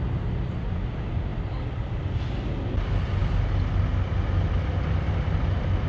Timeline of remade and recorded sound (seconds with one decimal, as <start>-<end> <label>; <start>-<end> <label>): 0.0-5.9 recorded